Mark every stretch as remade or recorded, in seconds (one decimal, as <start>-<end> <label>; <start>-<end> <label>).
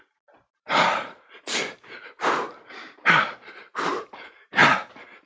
0.0-4.6 remade; 4.6-5.3 recorded